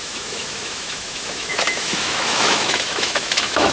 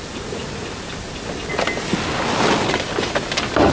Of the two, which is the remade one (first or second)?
first